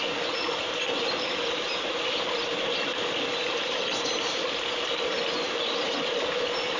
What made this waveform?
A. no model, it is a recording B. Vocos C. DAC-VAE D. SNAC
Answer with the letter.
A